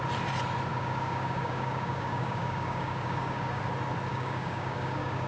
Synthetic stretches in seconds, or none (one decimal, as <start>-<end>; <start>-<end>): 0.7-3.6; 4.1-5.3